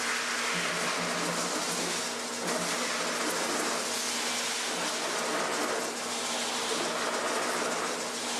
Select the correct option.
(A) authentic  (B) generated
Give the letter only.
A